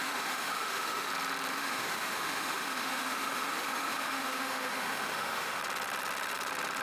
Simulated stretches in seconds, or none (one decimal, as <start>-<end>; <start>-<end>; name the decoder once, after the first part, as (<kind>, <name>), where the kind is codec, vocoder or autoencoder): 0.0-1.1 (autoencoder, DAC-VAE); 1.5-5.6

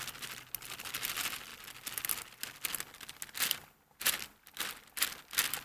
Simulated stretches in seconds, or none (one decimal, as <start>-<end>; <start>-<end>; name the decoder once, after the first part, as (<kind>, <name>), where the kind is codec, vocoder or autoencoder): none

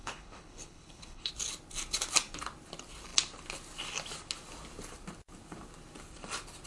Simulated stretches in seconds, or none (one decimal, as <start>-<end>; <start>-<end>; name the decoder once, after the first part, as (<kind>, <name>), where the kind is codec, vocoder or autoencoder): 0.0-1.3 (codec, HILCodec)

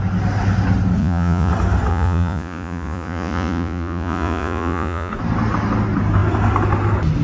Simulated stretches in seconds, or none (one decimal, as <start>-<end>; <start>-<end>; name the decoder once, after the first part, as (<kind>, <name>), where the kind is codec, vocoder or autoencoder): 1.0-1.5 (vocoder, Vocos); 1.9-5.1

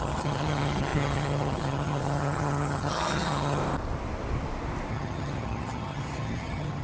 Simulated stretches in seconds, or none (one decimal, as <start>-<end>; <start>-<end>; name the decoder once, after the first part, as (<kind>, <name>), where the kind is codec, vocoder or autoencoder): 0.0-3.6 (vocoder, HiFi-GAN); 4.9-6.8

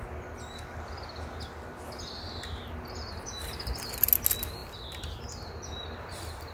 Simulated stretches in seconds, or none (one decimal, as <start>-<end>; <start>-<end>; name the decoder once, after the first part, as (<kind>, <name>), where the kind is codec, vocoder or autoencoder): none